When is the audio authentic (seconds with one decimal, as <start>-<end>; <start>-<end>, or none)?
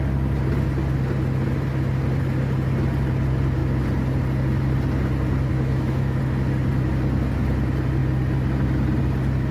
0.0-5.5; 6.2-9.5